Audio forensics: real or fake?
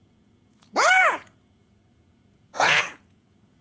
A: fake